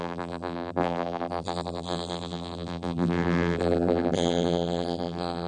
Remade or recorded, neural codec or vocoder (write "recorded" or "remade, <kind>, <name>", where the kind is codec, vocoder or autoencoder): remade, vocoder, BigVGAN v2